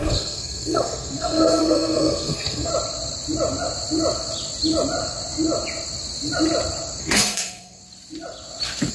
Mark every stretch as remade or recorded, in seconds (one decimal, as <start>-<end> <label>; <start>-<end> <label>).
0.0-2.7 remade; 2.7-7.0 recorded; 7.0-7.8 remade; 7.8-8.9 recorded